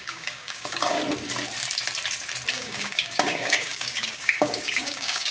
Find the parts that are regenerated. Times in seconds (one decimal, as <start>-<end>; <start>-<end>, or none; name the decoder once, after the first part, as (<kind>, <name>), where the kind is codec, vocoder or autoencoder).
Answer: 0.0-1.0 (codec, DAC); 2.5-5.3